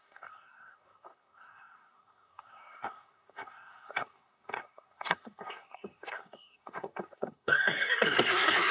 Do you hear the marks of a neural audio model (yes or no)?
yes